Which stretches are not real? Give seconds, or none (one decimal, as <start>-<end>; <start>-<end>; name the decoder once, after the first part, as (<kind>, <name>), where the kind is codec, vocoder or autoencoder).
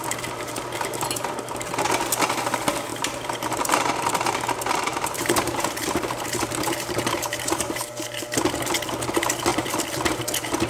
2.9-8.2 (vocoder, BigVGAN v2)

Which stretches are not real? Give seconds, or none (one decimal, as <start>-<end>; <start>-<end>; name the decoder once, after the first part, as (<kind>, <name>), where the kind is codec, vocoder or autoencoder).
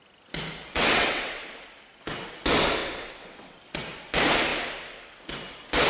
0.7-1.5 (vocoder, WaveNeXt); 2.8-3.6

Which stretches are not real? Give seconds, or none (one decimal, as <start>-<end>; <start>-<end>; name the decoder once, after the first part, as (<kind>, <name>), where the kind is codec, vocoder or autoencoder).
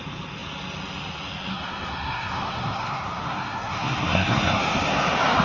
1.5-4.6 (codec, SNAC)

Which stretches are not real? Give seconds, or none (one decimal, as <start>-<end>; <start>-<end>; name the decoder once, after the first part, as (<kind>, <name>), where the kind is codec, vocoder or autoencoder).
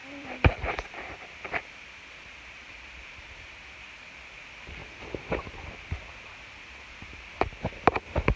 0.0-3.4 (vocoder, BigVGAN v2); 4.8-8.0